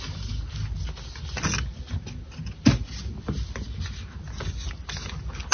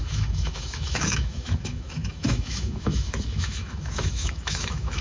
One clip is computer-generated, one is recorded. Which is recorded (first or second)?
first